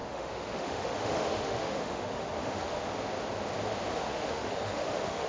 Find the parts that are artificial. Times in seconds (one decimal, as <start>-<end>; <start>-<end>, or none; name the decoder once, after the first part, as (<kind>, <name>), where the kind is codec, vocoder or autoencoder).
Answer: 0.0-2.9 (autoencoder, DAC-VAE); 3.9-5.3